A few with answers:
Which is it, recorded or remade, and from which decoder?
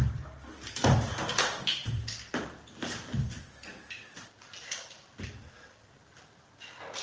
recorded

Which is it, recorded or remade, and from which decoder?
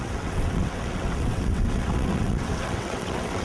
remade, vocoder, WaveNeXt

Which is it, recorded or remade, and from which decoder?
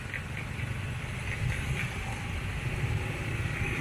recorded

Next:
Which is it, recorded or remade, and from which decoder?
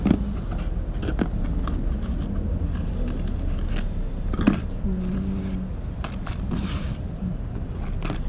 recorded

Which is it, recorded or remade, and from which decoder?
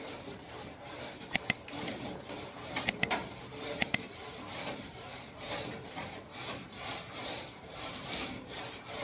remade, vocoder, BigVGAN v2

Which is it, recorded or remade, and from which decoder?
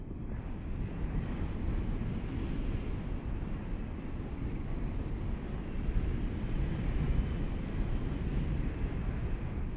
recorded